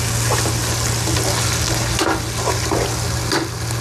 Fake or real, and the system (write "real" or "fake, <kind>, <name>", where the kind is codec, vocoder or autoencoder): real